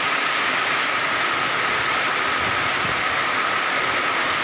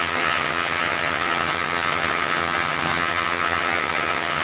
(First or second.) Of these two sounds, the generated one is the second